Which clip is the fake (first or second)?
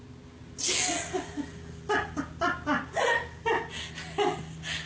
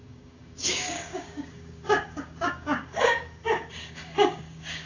second